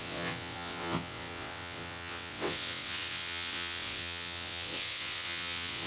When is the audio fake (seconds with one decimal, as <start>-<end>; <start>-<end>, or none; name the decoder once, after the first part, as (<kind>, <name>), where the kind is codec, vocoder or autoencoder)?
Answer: 0.0-5.9 (vocoder, WaveNeXt)